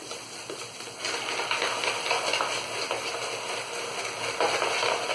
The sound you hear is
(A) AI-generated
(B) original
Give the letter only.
B